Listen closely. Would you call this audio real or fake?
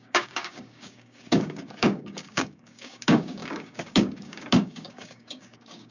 fake